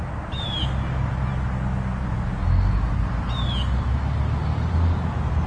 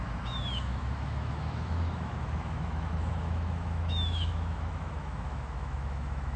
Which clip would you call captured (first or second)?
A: first